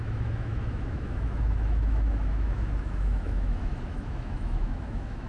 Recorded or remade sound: remade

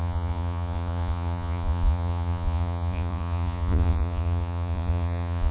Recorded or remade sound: remade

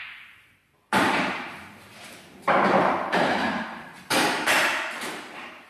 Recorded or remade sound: remade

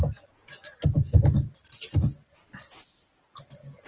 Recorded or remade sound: recorded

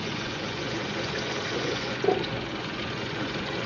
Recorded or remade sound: remade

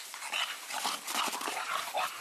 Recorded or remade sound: recorded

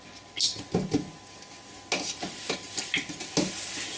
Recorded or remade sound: recorded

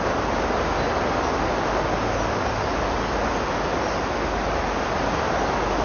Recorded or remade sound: recorded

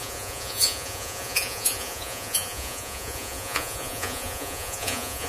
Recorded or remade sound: remade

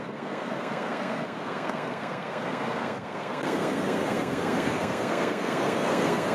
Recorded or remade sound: remade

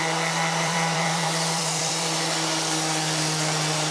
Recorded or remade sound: remade